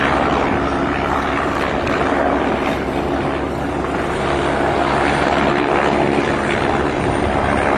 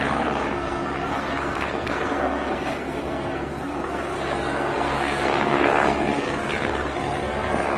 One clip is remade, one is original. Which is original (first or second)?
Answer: first